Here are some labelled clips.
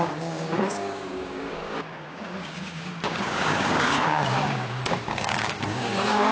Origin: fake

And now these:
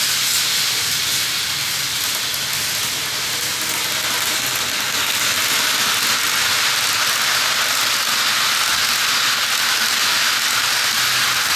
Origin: real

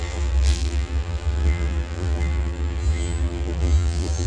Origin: fake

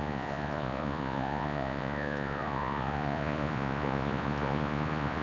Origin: fake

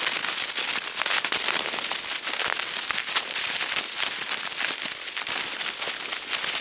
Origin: real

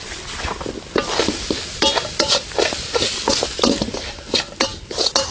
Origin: real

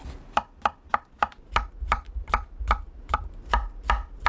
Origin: real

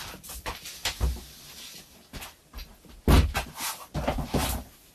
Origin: real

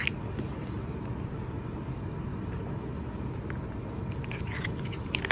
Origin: real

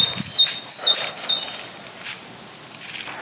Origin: real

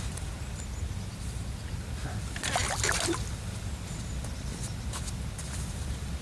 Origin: real